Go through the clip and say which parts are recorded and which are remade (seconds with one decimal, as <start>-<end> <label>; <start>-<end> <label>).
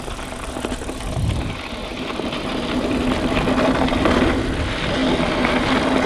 0.0-1.9 recorded; 1.9-3.0 remade; 3.0-6.1 recorded